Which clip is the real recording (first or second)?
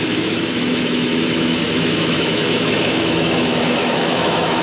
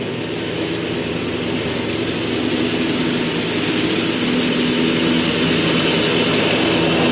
second